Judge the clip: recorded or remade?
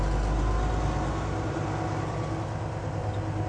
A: recorded